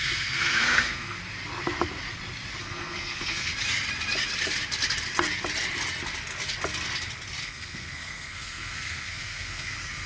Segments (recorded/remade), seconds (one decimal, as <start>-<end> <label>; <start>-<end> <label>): 0.0-1.2 remade; 1.2-2.6 recorded; 2.6-3.5 remade; 3.5-7.4 recorded; 7.4-10.1 remade